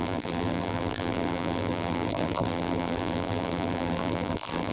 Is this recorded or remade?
remade